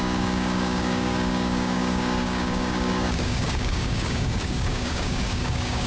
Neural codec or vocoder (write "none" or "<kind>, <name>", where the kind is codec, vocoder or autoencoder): codec, DAC